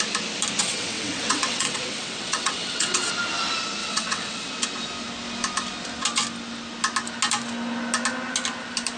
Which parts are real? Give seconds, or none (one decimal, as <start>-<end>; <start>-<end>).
0.0-0.6; 3.1-3.8; 4.5-9.0